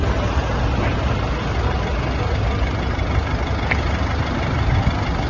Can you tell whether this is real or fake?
real